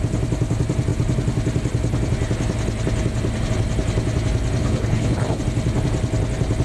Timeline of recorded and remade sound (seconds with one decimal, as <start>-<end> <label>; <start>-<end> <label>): 0.0-4.6 recorded; 4.6-5.4 remade; 5.4-6.6 recorded